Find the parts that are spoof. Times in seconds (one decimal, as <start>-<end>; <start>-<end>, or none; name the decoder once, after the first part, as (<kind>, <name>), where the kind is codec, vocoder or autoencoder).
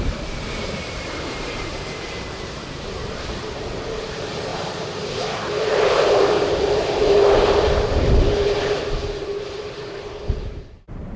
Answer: 0.0-11.2 (vocoder, BigVGAN v2)